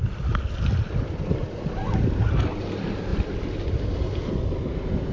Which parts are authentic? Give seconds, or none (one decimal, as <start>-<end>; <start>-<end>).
0.0-5.1